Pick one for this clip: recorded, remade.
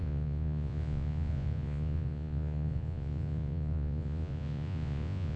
remade